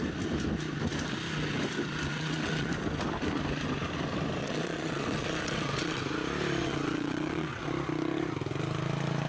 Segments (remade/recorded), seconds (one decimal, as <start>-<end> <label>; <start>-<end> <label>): 0.0-2.1 recorded; 2.1-2.7 remade; 2.7-4.4 recorded; 4.4-6.0 remade; 6.0-6.6 recorded; 6.6-7.7 remade; 7.7-9.3 recorded